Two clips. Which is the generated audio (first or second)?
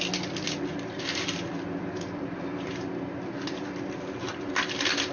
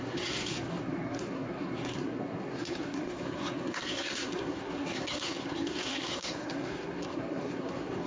second